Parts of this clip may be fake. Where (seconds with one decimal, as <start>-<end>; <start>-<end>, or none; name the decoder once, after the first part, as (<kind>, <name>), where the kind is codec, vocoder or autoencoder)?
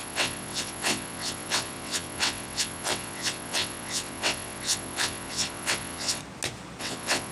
0.0-6.2 (vocoder, WaveNeXt); 6.8-7.3